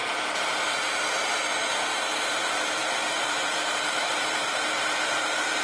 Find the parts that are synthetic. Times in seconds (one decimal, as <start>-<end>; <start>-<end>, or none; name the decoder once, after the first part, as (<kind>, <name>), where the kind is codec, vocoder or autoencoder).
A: 1.7-5.6 (vocoder, BigVGAN v2)